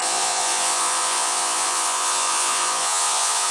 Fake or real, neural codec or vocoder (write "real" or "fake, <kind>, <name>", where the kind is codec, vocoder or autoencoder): fake, vocoder, Vocos